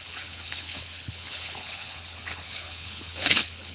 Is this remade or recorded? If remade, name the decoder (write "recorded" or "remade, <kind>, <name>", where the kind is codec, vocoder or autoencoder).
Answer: remade, codec, HILCodec